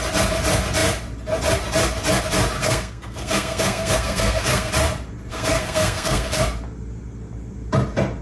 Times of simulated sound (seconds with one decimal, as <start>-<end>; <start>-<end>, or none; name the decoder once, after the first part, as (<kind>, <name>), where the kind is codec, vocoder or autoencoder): 2.6-4.7 (codec, SNAC); 5.3-6.4